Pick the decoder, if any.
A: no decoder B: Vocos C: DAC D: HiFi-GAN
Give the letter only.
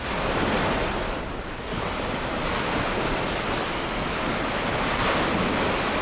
A